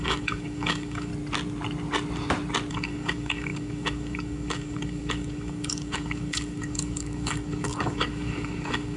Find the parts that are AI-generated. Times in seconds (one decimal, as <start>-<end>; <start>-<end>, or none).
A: 0.0-1.1; 2.7-9.0